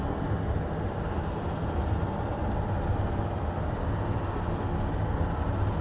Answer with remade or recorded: recorded